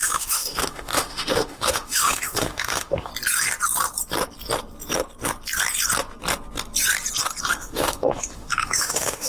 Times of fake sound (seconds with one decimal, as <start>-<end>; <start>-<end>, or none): 0.0-3.1; 7.4-9.3